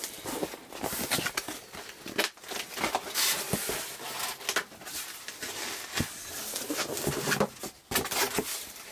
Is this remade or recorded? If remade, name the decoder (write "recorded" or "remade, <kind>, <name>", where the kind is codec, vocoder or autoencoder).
recorded